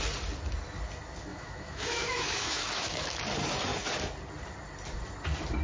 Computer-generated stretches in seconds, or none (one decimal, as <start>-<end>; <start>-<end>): 1.3-3.2